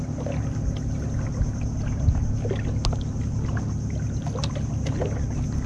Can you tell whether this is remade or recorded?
recorded